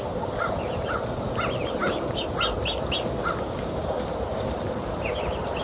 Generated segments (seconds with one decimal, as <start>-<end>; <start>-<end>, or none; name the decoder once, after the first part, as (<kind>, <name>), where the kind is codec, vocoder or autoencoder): none